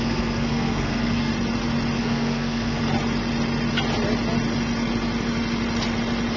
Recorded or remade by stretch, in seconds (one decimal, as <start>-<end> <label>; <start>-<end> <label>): 0.0-1.3 remade; 1.3-2.0 recorded; 2.0-2.8 remade; 2.8-6.4 recorded